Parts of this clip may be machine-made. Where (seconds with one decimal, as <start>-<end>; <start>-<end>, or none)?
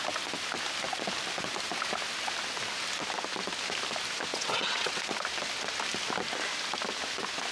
4.3-5.0